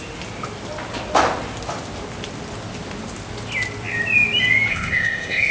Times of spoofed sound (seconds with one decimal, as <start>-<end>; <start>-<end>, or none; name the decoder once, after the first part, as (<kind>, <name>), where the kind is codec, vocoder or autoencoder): 4.7-5.5 (codec, ZipCodec)